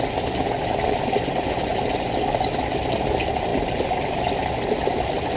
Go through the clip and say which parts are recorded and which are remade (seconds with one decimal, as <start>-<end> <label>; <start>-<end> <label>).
0.0-5.4 recorded